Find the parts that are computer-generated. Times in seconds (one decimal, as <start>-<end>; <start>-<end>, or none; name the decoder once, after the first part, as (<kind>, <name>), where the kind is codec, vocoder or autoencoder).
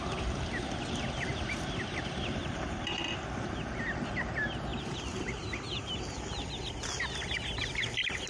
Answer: 1.3-4.0 (vocoder, BigVGAN v2); 4.7-5.8